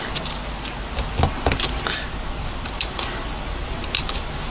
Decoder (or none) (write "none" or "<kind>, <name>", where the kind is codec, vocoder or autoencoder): none